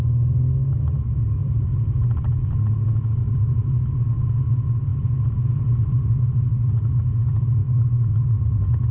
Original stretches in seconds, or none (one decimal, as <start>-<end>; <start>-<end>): 0.0-1.4; 2.4-3.2; 3.8-4.9; 6.1-8.9